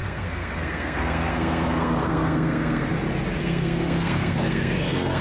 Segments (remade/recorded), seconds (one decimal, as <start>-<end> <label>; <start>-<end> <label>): 0.0-2.9 remade; 2.9-3.4 recorded; 3.4-5.2 remade